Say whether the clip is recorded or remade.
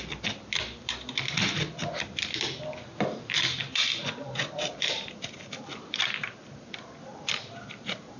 remade